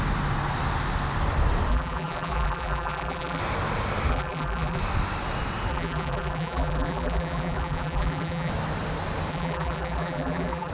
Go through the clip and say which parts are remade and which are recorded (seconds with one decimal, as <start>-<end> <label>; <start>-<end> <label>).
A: 0.0-1.7 recorded; 1.7-3.4 remade; 3.4-4.1 recorded; 4.1-4.8 remade; 4.8-5.7 recorded; 5.7-8.5 remade; 8.5-9.3 recorded; 9.3-10.7 remade